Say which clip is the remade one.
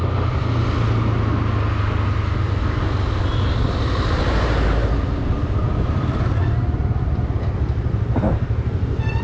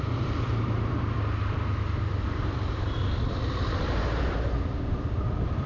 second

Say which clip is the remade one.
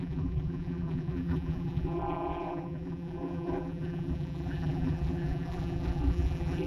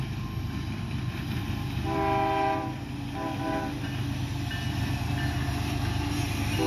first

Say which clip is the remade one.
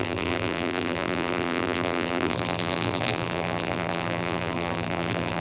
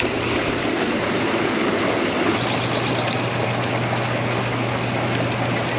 first